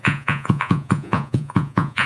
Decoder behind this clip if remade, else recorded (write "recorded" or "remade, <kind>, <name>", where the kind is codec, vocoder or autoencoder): remade, vocoder, Vocos